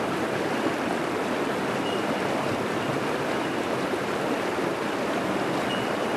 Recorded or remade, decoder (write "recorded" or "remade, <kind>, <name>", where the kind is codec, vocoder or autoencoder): recorded